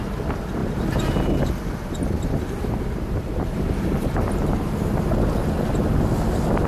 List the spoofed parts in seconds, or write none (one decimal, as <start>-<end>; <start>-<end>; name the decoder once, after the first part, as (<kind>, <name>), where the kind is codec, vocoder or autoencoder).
none